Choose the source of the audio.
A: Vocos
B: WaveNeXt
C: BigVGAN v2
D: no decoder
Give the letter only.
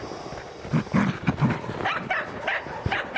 D